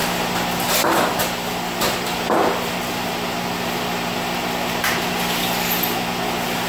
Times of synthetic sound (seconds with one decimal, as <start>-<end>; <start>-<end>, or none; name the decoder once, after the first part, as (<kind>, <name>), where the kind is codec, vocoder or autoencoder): none